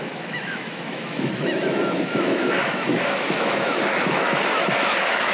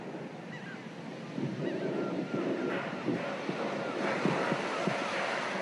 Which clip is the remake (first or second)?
first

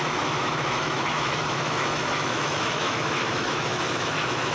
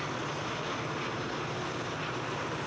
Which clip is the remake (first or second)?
first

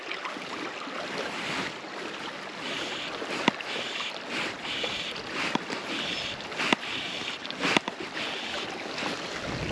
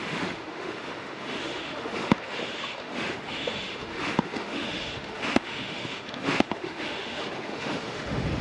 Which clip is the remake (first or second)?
second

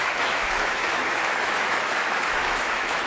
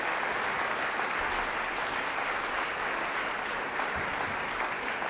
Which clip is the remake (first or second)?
first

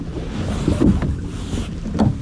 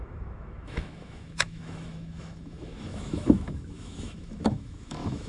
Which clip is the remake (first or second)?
second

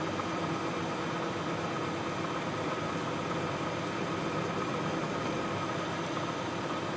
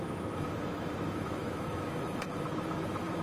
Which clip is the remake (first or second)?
second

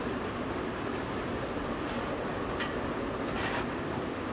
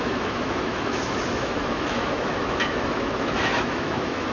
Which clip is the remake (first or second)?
second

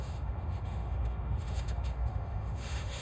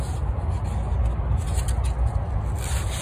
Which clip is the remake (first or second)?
first